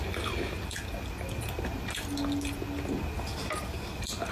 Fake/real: real